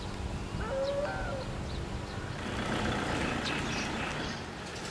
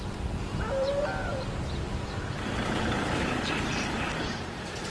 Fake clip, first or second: second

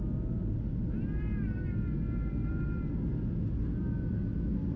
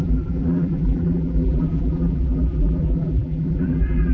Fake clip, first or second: second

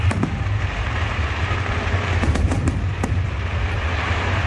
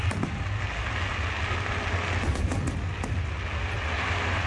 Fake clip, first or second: first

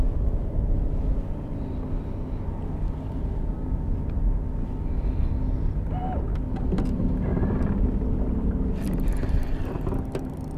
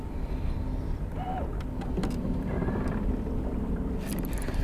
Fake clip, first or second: second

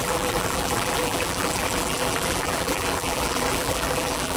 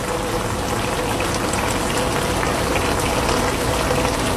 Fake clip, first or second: first